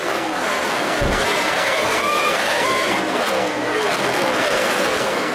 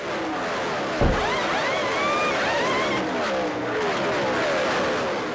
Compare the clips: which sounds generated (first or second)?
first